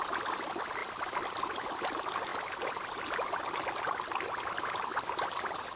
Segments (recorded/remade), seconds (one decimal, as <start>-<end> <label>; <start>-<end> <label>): 0.0-0.8 recorded; 0.8-1.5 remade; 1.5-5.8 recorded